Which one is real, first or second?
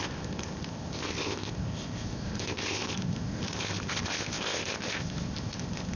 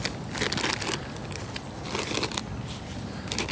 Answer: second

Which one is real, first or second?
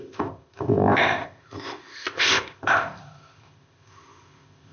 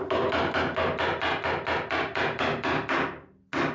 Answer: second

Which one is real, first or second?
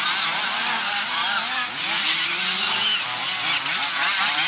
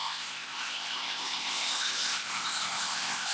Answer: first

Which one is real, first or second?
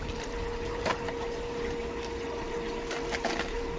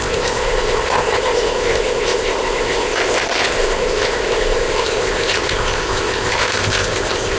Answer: first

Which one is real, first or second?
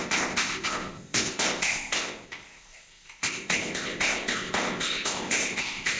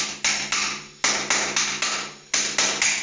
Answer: second